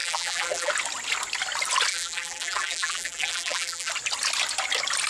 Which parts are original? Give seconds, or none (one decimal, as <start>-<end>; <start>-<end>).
0.7-1.9; 3.9-5.1